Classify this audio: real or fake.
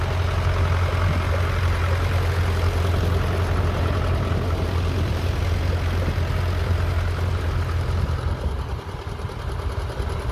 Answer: real